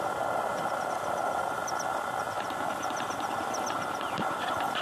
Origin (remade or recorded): recorded